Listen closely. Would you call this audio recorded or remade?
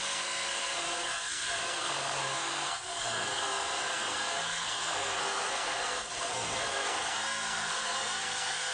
remade